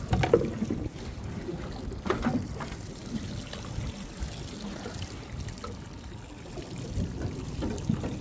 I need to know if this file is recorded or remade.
recorded